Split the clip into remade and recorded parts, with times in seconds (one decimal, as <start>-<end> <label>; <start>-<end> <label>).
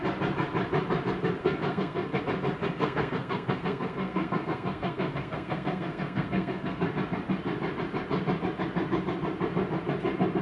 0.0-1.4 recorded; 1.4-2.2 remade; 2.2-2.6 recorded; 2.6-6.8 remade; 6.8-10.4 recorded